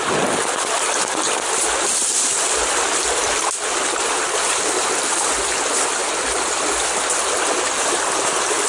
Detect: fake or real real